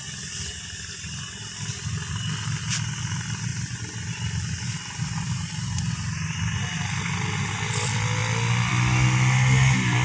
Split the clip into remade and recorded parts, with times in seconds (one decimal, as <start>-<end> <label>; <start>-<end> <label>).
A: 0.0-10.0 recorded